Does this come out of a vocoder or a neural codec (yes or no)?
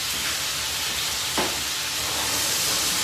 no